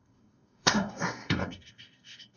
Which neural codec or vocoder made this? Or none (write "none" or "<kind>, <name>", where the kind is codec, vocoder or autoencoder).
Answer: codec, SNAC